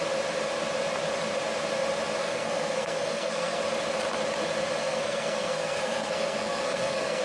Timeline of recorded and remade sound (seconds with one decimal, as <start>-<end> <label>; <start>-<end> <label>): 0.0-2.2 recorded; 2.2-3.6 remade; 3.6-4.8 recorded; 4.8-7.2 remade